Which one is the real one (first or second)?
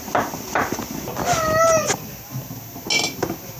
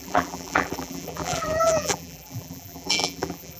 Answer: first